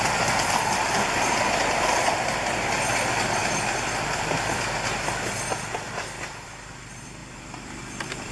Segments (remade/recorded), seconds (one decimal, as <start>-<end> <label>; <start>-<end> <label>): 0.0-8.3 recorded